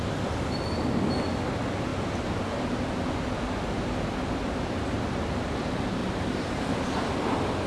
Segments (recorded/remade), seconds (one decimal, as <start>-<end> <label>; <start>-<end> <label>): 0.0-6.0 recorded; 6.0-7.3 remade; 7.3-7.7 recorded